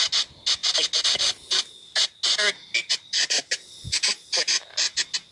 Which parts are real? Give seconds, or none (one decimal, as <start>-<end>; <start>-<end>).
0.0-5.3